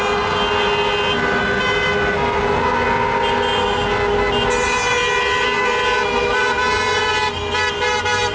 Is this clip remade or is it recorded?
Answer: recorded